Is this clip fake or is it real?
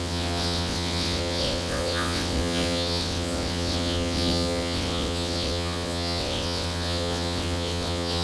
fake